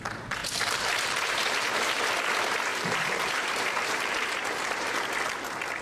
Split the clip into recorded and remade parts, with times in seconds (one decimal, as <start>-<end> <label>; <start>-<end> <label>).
0.0-0.4 recorded; 0.4-2.0 remade; 2.0-2.7 recorded; 2.7-4.9 remade; 4.9-5.8 recorded